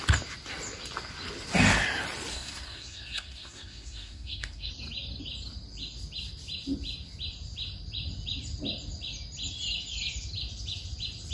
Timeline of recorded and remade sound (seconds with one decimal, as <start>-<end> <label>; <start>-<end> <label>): 0.0-2.3 recorded; 2.3-4.7 remade; 4.7-11.3 recorded